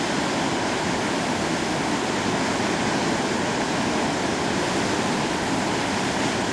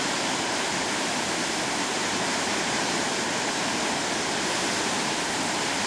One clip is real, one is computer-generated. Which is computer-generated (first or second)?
second